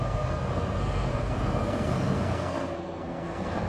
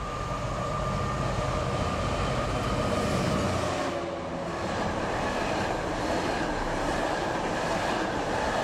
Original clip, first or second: second